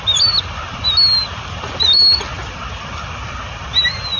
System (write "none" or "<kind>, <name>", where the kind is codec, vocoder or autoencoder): none